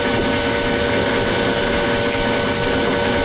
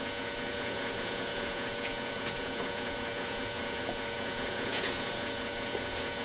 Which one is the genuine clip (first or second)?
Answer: first